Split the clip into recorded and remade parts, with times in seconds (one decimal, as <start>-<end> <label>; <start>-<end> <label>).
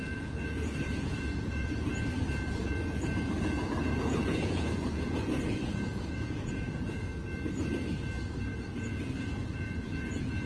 0.0-1.9 remade; 1.9-3.4 recorded; 3.4-7.1 remade; 7.1-8.4 recorded; 8.4-10.5 remade